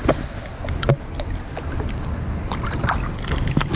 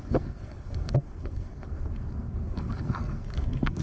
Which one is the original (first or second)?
first